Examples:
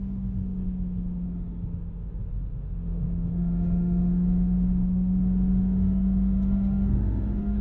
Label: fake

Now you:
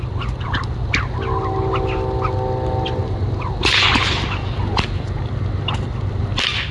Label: real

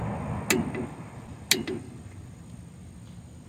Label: real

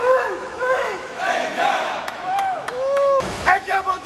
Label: fake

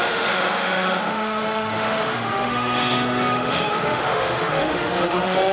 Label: fake